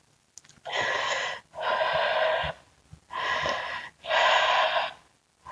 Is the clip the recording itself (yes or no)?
yes